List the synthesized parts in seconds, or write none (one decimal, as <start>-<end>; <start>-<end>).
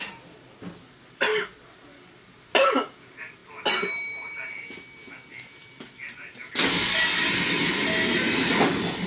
none